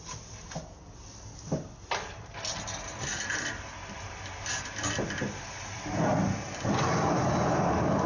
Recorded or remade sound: recorded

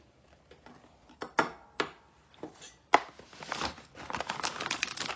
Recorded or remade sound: recorded